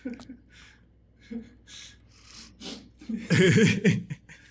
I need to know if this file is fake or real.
real